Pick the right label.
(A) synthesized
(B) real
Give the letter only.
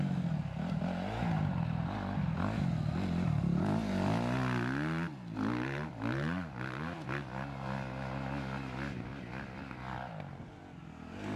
B